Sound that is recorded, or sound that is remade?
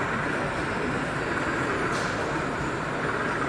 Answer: remade